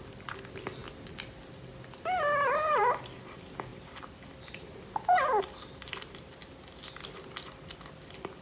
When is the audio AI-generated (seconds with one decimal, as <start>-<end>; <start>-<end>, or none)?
none